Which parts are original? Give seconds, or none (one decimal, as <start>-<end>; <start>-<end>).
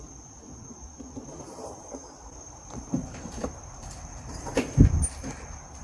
4.5-5.8